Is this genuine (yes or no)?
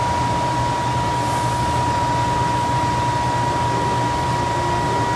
yes